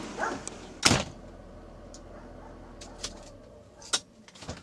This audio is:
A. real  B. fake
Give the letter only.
A